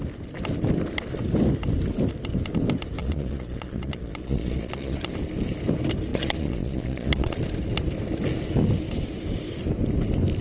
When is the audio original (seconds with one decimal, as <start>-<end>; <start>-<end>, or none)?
0.0-3.0; 5.1-6.1; 7.4-10.4